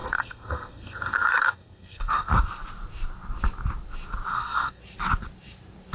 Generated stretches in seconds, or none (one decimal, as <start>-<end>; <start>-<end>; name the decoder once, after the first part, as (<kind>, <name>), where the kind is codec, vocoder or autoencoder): 0.0-2.3 (codec, SNAC); 4.3-4.8